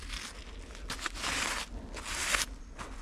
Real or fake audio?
real